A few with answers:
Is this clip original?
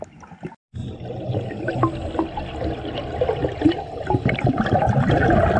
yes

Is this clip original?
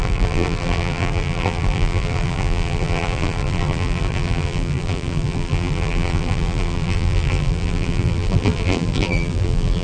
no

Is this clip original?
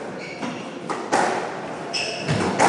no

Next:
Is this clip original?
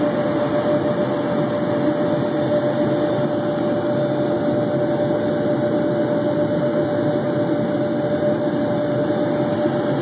yes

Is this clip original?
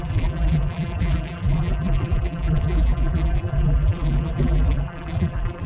no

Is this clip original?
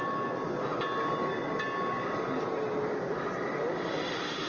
yes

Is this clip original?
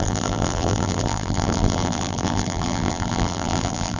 no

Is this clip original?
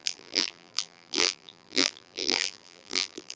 no